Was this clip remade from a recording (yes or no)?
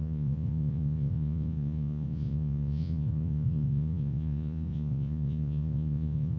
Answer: yes